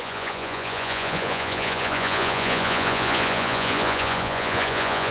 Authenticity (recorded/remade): remade